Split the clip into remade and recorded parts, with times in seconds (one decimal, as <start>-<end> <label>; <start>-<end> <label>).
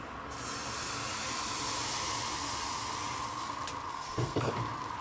0.0-3.9 recorded; 3.9-4.5 remade; 4.5-5.0 recorded